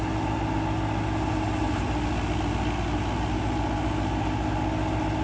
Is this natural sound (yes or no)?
yes